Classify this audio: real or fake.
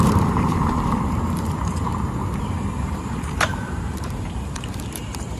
fake